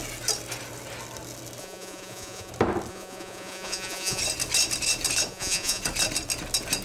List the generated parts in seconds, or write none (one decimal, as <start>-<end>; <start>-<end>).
1.6-2.5; 2.9-4.2; 5.3-5.8